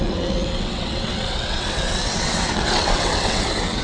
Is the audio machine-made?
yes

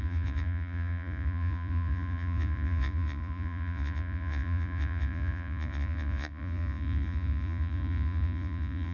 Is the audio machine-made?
yes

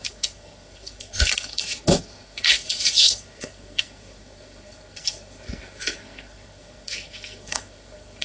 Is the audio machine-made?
yes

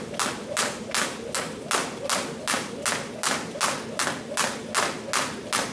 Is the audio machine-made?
no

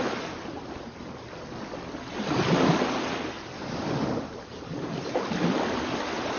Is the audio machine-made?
no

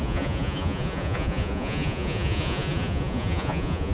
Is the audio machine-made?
yes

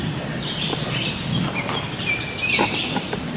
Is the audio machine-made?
no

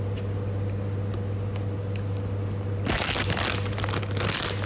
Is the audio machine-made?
no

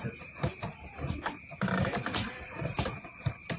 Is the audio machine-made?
yes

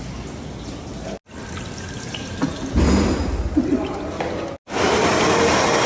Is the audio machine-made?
no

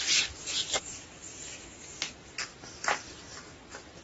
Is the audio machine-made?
no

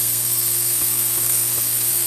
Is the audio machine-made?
yes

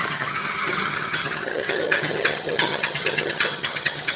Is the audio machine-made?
yes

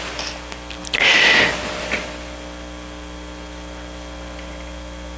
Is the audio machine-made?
no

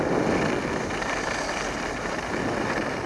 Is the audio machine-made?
no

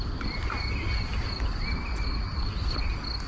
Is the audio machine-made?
no